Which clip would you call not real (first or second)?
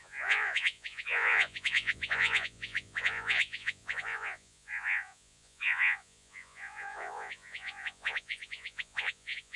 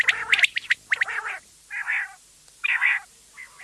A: first